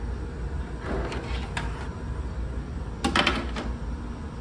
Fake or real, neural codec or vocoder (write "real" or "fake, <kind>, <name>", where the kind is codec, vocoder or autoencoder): real